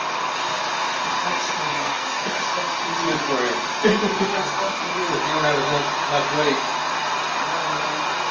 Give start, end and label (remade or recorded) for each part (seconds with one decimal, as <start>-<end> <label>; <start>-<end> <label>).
0.0-1.7 recorded; 1.7-2.3 remade; 2.3-3.9 recorded; 3.9-4.9 remade; 4.9-8.3 recorded